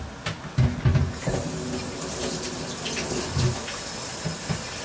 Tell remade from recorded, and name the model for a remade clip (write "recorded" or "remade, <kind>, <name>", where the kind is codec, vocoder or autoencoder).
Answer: recorded